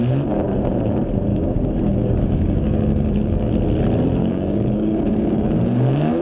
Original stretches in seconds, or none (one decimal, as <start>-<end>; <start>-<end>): 0.0-1.3; 3.5-4.2